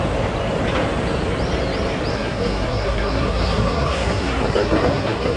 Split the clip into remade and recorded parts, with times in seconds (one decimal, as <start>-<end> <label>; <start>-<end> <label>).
0.0-2.1 recorded; 2.1-5.4 remade